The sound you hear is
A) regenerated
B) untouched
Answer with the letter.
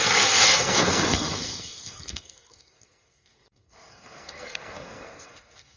A